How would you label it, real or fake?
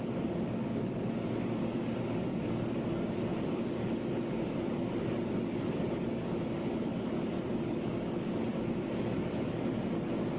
fake